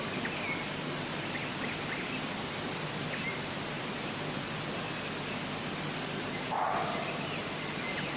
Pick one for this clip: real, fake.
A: real